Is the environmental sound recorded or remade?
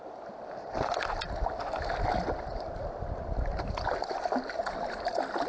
recorded